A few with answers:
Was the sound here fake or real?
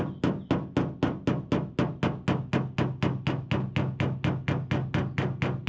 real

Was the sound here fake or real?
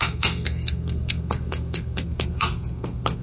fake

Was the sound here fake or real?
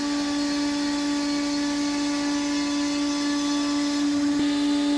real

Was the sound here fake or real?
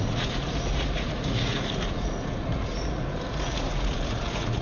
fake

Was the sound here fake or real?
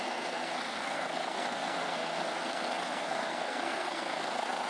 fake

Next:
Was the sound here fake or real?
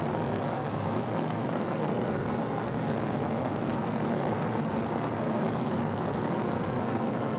fake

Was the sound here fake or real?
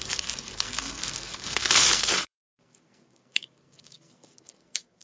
fake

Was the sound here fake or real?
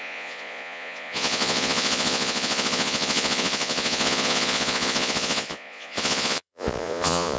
fake